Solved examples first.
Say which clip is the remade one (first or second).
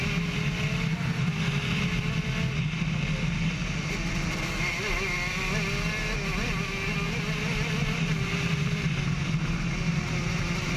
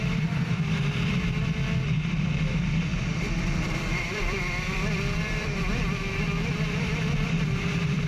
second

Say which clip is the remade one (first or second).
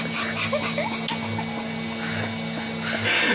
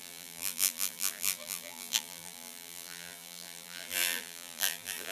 second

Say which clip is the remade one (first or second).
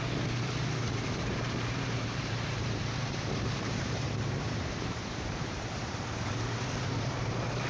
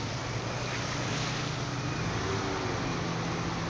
first